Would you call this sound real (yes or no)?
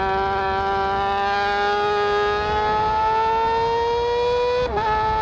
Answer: yes